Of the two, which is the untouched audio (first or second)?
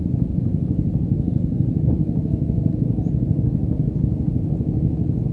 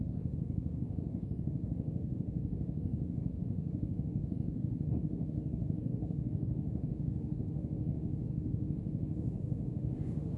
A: first